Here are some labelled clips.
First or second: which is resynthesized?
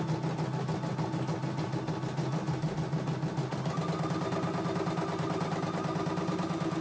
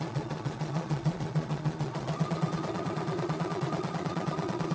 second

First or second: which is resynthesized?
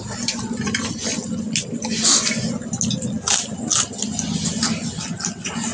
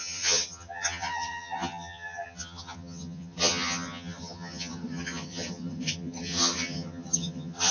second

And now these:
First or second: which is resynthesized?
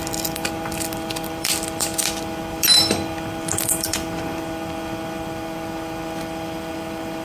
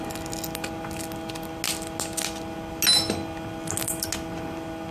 first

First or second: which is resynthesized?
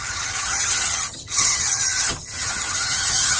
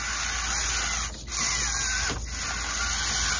first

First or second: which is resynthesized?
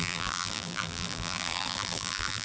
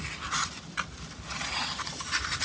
first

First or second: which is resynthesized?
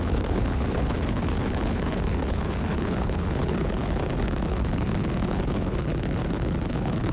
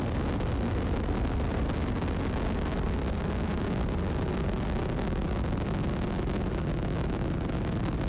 first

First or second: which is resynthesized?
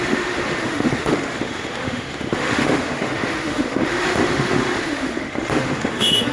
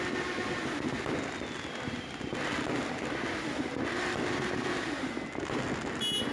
first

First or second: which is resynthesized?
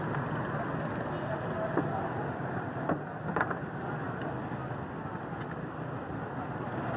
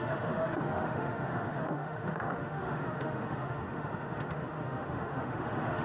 second